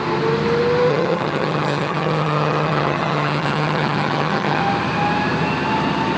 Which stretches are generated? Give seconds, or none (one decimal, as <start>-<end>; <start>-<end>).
0.9-4.6

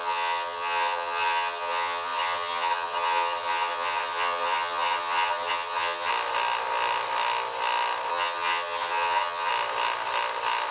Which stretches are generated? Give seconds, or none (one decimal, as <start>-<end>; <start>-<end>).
0.0-6.1; 8.1-9.5

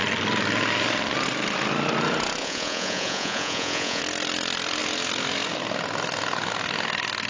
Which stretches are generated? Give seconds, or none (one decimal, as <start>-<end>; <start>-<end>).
2.4-4.0

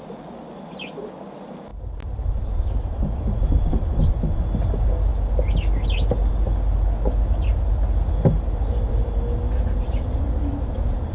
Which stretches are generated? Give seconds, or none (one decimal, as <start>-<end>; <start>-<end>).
none

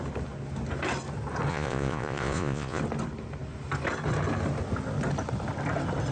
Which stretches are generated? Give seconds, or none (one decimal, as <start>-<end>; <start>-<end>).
1.5-2.8

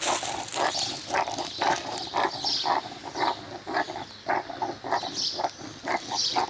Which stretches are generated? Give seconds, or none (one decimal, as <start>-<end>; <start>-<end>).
none

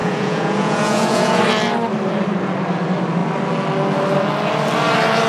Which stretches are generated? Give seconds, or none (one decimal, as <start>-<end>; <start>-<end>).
0.0-1.4

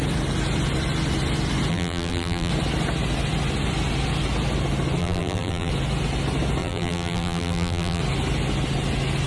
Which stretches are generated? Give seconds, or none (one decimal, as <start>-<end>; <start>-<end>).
1.7-2.5; 5.0-5.7; 6.6-8.0